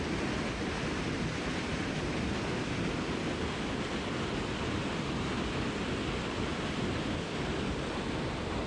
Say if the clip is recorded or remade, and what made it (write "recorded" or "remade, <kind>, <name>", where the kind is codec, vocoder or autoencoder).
recorded